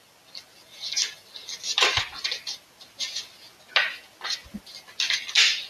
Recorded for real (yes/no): yes